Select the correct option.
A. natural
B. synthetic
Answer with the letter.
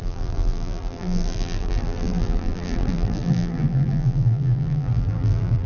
B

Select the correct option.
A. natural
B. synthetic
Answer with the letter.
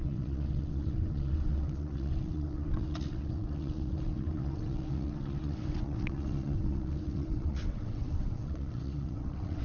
B